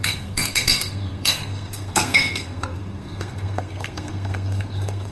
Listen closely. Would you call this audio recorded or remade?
remade